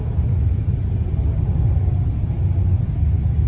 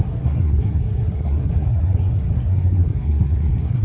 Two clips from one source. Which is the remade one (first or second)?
second